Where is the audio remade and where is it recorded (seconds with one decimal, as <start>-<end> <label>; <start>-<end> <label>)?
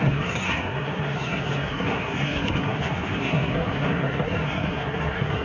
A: 0.0-5.4 remade